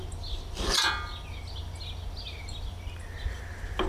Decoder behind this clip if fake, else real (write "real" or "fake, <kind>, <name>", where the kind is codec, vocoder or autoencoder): real